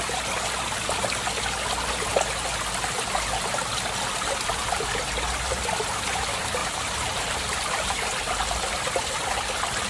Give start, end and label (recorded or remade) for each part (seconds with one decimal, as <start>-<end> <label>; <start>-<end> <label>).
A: 0.0-6.6 recorded; 6.6-8.1 remade; 8.1-9.9 recorded